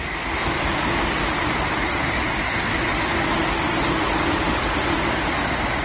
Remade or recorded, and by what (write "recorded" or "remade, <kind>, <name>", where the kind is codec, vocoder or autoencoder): recorded